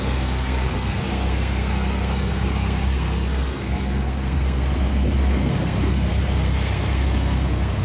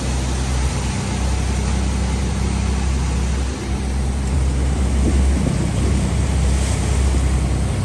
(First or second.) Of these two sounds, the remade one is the first